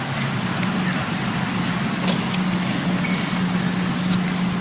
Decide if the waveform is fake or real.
real